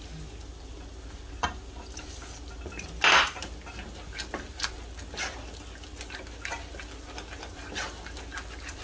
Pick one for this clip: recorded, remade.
recorded